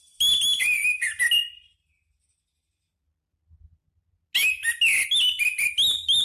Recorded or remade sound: recorded